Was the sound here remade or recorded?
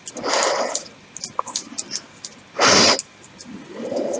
recorded